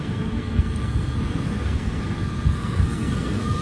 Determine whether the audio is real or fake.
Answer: fake